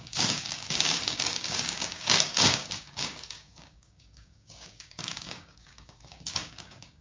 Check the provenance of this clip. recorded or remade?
remade